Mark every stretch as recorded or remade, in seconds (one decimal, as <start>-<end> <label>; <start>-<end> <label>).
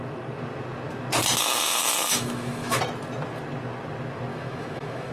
0.0-1.8 recorded; 1.8-2.8 remade; 2.8-4.3 recorded; 4.3-5.1 remade